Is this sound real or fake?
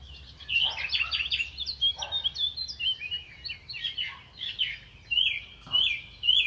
real